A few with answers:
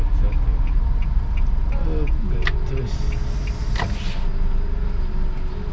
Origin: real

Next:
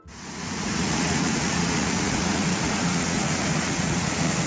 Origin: fake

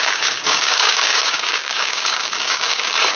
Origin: fake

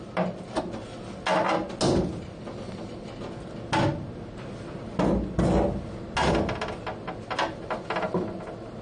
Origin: real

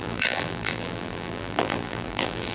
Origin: fake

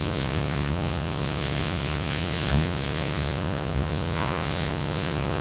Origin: fake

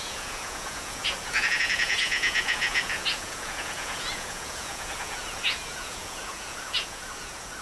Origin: fake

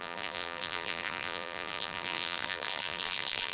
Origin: fake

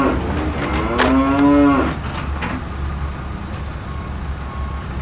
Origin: real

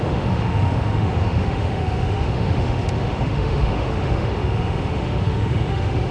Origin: fake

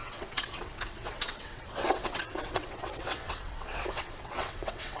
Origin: fake